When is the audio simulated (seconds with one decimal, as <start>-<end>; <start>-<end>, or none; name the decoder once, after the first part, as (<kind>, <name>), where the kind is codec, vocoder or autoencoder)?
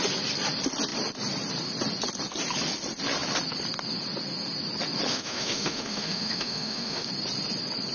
5.1-7.1 (autoencoder, DAC-VAE)